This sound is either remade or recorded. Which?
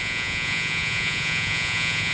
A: remade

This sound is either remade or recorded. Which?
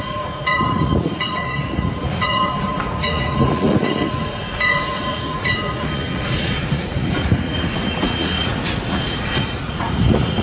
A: remade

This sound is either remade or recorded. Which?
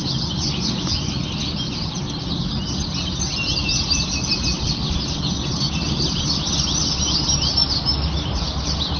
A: recorded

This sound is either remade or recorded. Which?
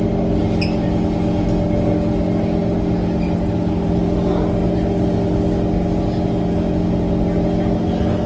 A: recorded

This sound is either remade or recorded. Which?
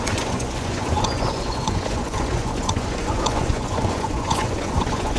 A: remade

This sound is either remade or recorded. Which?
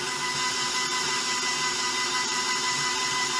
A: recorded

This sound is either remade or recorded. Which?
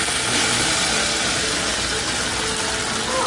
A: recorded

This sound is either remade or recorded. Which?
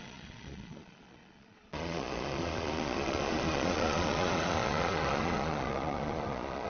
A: remade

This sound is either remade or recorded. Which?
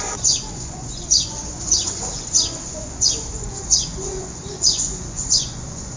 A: remade